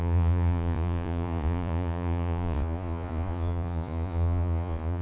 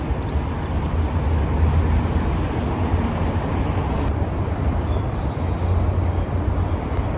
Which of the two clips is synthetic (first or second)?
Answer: first